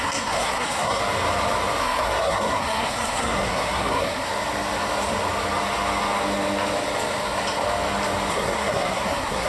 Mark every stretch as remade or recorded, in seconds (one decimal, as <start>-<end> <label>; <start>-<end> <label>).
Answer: 0.0-1.0 remade; 1.0-1.8 recorded; 1.8-4.3 remade; 4.3-8.3 recorded; 8.3-9.5 remade